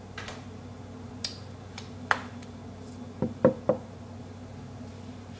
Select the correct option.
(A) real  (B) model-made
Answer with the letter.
A